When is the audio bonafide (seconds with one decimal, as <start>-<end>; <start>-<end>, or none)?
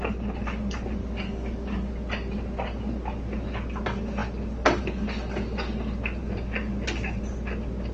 0.0-1.0; 1.9-7.9